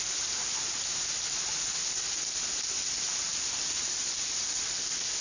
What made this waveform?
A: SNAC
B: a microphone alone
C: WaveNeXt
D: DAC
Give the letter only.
B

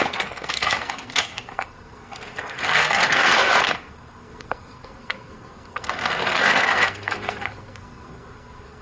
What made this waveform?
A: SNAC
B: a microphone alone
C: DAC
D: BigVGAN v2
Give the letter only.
A